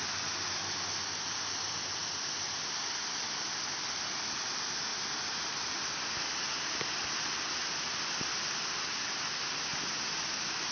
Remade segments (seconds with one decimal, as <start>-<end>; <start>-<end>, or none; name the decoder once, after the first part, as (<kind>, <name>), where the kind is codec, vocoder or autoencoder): 2.0-4.4 (vocoder, BigVGAN v2); 4.9-6.5; 9.7-10.7